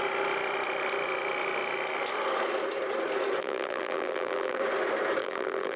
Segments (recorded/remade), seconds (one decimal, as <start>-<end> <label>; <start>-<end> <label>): 0.0-3.4 recorded; 3.4-4.6 remade; 4.6-5.2 recorded; 5.2-5.8 remade